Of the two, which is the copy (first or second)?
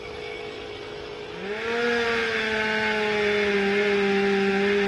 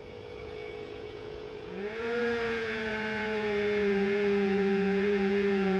second